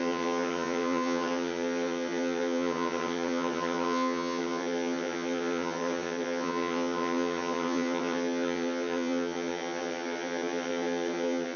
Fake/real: fake